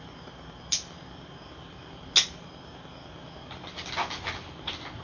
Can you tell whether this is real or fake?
real